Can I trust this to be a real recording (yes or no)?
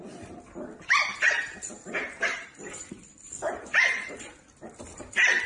no